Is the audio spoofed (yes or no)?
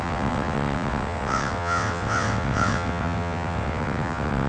yes